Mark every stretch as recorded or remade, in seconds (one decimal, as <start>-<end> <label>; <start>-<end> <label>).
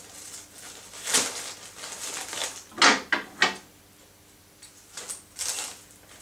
0.0-4.4 recorded; 4.4-5.0 remade; 5.0-6.2 recorded